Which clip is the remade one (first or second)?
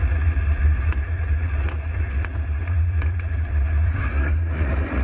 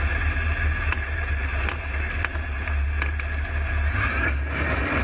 first